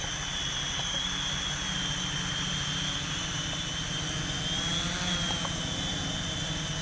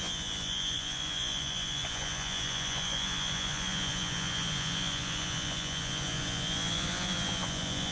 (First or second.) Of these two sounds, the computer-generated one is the second